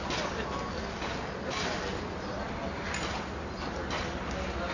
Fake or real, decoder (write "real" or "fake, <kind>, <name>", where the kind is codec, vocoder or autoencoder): real